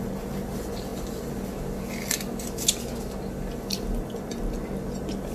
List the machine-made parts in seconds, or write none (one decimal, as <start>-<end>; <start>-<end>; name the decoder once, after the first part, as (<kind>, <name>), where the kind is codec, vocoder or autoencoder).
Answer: none